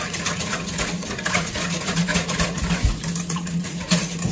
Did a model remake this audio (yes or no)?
yes